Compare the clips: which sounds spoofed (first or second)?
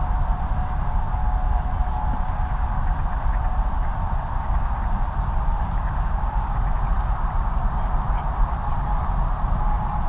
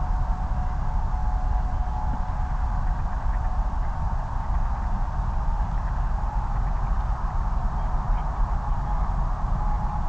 first